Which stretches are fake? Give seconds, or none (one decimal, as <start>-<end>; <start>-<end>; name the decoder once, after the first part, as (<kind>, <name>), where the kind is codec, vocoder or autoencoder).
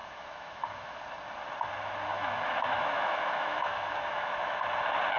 0.0-1.0 (autoencoder, DAC-VAE); 2.1-4.6